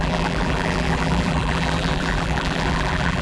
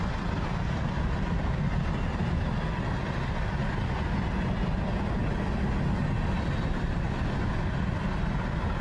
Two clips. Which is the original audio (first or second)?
second